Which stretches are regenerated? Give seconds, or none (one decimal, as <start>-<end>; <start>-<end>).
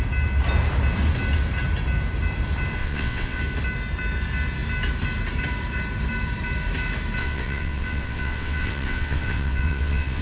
2.8-3.4; 7.2-10.2